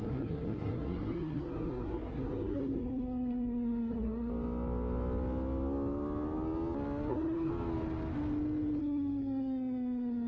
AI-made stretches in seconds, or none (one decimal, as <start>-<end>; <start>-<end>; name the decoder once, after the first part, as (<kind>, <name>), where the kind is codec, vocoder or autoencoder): 0.0-4.3 (codec, SNAC); 7.1-7.5; 8.8-10.3